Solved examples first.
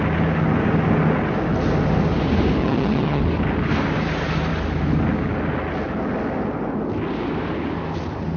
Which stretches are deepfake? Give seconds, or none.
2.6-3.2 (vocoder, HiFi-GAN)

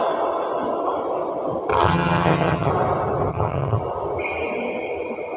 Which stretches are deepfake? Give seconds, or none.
1.7-2.7 (vocoder, HiFi-GAN); 3.3-3.8

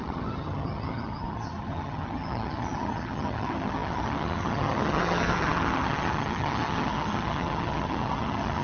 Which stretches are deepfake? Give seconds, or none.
0.0-8.6 (vocoder, HiFi-GAN)

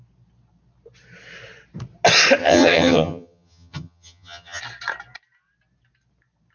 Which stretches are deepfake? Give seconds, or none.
2.4-4.6 (vocoder, HiFi-GAN)

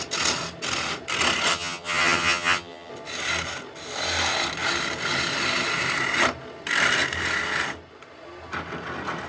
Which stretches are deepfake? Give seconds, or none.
1.5-2.9 (vocoder, HiFi-GAN)

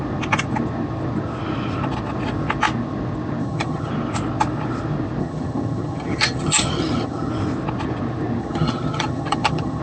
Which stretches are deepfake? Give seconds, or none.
3.4-3.9 (vocoder, HiFi-GAN); 5.2-7.3; 8.4-9.8

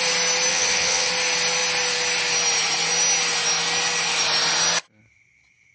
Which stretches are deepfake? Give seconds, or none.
0.5-1.1 (vocoder, HiFi-GAN)